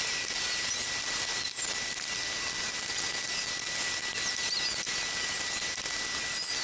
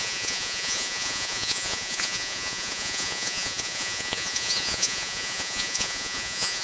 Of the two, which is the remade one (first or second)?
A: second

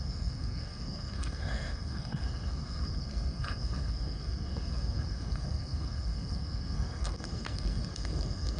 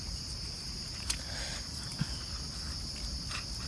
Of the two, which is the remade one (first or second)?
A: first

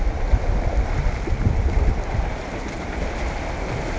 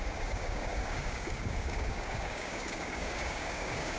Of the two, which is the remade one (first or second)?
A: second